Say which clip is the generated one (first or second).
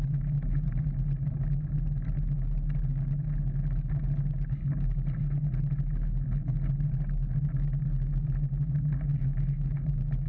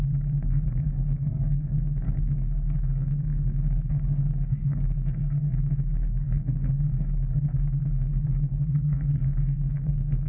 second